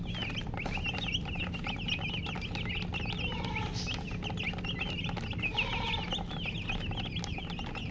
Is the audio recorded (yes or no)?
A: yes